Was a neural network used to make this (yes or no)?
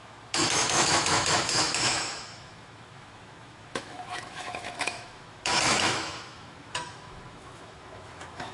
yes